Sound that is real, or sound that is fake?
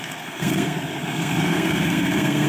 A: fake